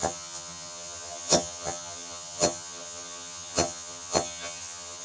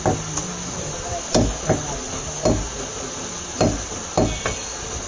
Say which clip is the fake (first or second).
first